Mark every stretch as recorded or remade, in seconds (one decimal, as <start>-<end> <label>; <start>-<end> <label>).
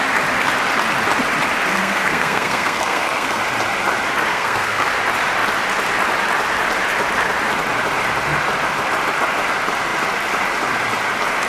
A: 0.0-1.7 recorded; 1.7-3.4 remade; 3.4-4.3 recorded; 4.3-4.9 remade; 4.9-11.5 recorded